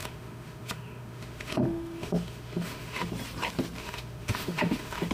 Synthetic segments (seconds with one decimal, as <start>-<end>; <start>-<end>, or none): 0.0-3.1; 3.8-5.1